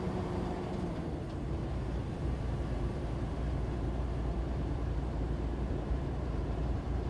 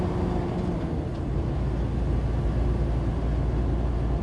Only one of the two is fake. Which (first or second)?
first